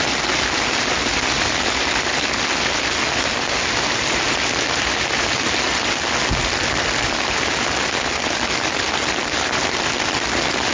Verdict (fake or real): real